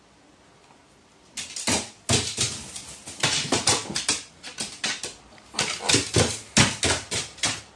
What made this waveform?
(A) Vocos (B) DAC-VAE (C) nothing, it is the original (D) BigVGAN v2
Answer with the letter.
C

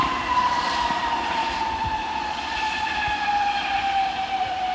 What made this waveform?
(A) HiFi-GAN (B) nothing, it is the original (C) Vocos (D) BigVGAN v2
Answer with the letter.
D